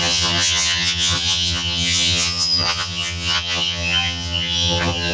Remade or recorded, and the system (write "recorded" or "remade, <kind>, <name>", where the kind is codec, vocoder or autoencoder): remade, vocoder, HiFi-GAN